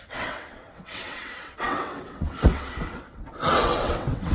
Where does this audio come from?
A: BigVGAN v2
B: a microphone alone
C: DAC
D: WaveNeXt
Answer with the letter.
D